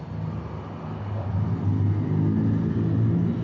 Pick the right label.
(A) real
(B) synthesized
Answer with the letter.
A